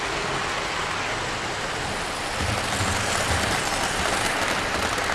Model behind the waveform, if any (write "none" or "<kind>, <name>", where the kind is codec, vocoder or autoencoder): none